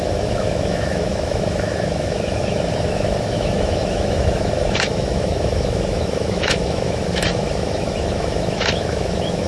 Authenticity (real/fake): fake